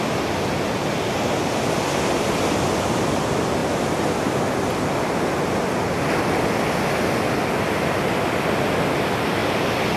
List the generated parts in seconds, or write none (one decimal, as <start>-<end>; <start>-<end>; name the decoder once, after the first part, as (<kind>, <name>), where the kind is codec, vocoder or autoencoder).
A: none